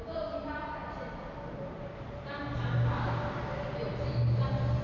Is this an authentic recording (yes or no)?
yes